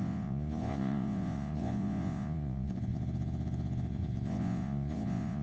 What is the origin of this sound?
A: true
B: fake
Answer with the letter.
B